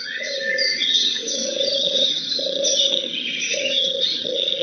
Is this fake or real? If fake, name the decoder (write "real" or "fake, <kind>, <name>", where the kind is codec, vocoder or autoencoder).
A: fake, vocoder, HiFi-GAN